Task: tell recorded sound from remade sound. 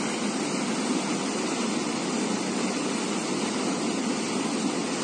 recorded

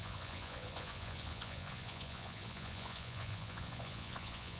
remade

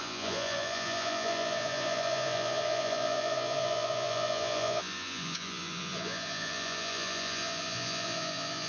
remade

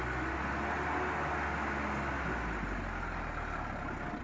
recorded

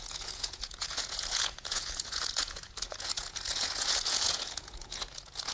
remade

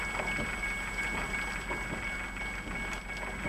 recorded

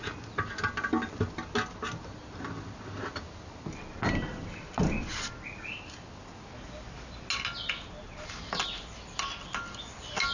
recorded